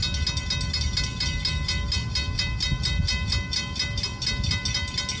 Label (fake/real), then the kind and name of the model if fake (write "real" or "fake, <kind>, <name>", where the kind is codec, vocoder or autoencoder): real